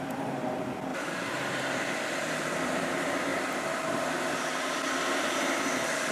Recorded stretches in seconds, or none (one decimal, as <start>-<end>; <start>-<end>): 0.9-2.4; 3.3-6.1

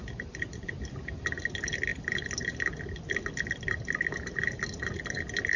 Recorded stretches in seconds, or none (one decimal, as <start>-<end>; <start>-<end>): 0.0-5.6

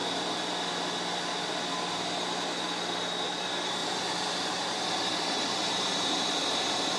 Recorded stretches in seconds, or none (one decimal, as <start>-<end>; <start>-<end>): 0.0-3.8

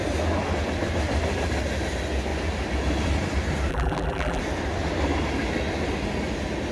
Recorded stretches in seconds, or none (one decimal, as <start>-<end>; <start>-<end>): 0.0-3.7; 4.4-6.7

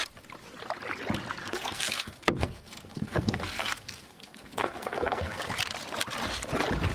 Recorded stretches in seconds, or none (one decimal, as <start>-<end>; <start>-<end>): 0.0-1.4; 5.5-6.9

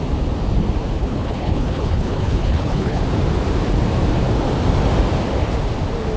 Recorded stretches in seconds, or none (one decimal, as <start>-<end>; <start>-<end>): 0.0-1.0; 3.0-6.2

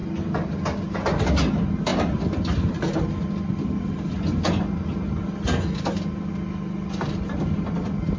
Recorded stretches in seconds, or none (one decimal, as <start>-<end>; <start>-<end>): 0.0-8.2